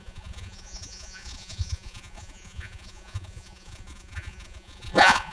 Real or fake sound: fake